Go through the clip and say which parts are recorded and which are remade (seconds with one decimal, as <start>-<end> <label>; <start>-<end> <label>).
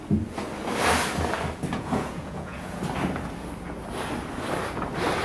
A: 0.0-1.7 recorded; 1.7-2.8 remade; 2.8-5.2 recorded